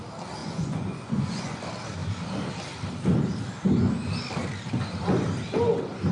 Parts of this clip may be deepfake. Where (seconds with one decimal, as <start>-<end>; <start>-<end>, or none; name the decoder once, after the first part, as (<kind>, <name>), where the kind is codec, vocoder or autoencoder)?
0.4-1.6 (vocoder, Vocos)